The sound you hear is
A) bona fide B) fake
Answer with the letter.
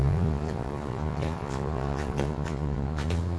B